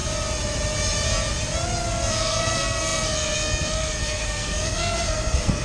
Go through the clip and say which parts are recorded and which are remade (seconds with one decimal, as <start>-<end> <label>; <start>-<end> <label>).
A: 0.0-2.1 recorded; 2.1-5.6 remade